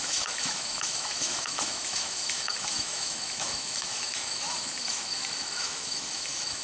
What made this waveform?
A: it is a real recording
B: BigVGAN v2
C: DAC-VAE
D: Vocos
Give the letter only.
C